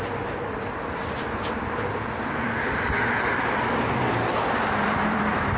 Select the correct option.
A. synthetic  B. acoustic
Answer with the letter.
A